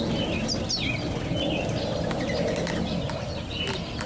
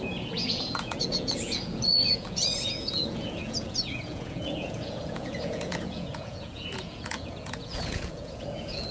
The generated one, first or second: second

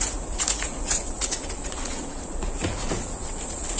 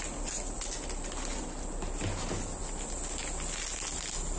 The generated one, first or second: first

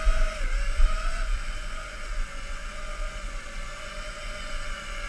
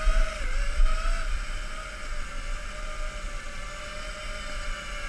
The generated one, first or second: first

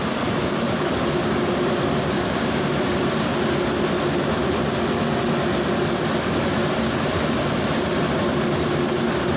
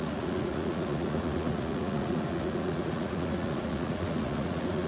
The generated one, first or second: second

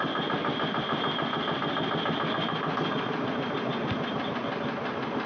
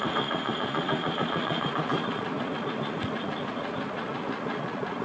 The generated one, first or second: second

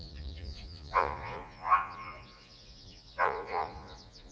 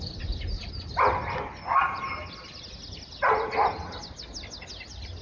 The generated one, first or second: first